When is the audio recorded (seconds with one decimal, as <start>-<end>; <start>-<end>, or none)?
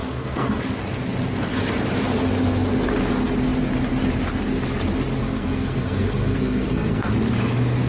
0.6-5.2; 7.1-7.9